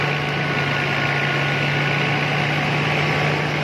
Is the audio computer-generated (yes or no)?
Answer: no